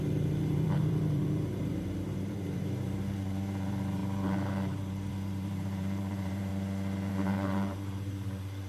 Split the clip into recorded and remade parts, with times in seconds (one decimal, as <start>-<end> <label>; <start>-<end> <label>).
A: 0.0-6.5 remade; 6.5-7.1 recorded; 7.1-8.7 remade